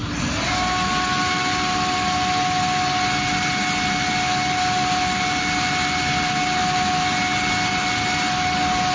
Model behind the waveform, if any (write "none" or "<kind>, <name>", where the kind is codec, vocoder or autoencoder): none